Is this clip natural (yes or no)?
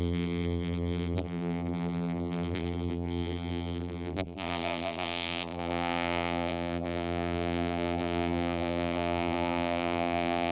no